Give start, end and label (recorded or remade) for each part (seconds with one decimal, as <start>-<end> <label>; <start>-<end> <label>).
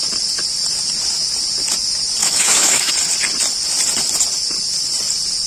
0.0-2.2 recorded; 2.2-2.9 remade; 2.9-5.5 recorded